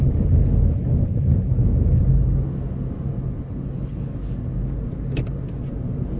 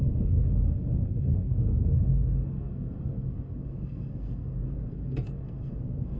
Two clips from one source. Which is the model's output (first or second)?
second